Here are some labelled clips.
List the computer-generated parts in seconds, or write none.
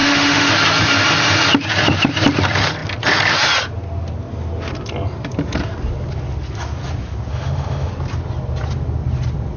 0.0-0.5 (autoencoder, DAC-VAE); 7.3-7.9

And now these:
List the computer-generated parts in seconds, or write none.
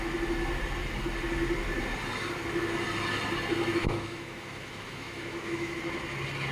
3.8-5.8 (autoencoder, DAC-VAE)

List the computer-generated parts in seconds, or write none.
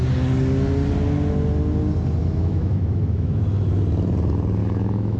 2.2-3.4 (autoencoder, DAC-VAE); 4.6-5.2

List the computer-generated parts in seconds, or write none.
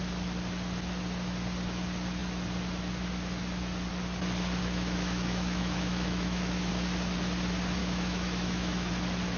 4.6-6.7 (autoencoder, DAC-VAE); 7.8-8.9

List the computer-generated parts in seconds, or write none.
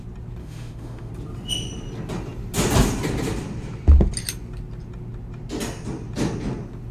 0.4-1.1 (autoencoder, DAC-VAE)